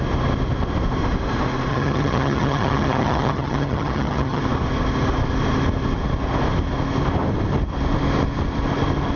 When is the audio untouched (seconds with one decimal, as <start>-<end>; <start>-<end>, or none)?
0.0-1.7; 4.4-9.2